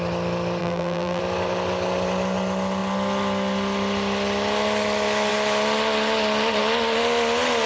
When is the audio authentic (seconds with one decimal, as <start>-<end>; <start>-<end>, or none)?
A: 0.0-0.6; 1.2-7.7